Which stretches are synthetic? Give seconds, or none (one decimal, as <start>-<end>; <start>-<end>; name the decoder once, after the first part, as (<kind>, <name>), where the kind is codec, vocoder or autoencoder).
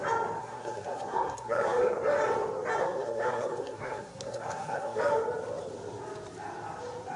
0.4-2.0 (codec, SNAC); 2.8-5.0